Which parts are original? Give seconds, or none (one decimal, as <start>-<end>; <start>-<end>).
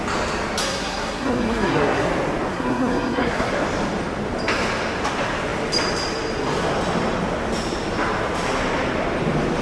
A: 0.0-0.6; 2.1-2.5; 3.5-9.6